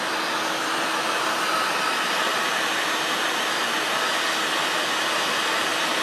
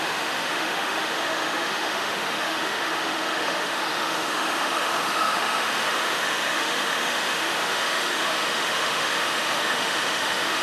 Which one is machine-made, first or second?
second